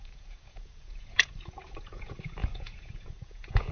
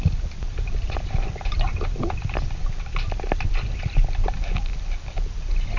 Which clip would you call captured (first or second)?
second